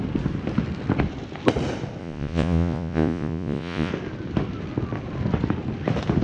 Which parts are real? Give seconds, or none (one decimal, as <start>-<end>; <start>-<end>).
0.0-2.0; 3.9-6.2